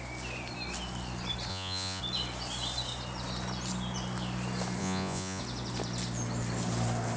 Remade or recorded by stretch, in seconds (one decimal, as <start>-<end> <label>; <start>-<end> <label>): 0.0-1.5 recorded; 1.5-2.0 remade; 2.0-4.8 recorded; 4.8-5.4 remade; 5.4-7.2 recorded